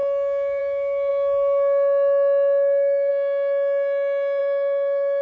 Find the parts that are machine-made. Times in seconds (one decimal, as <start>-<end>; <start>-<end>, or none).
4.4-5.2